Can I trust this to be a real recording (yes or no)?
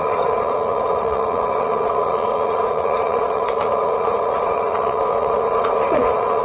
no